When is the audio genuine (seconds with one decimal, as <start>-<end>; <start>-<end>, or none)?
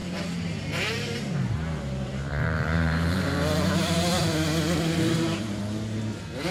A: 4.3-4.8; 5.6-6.5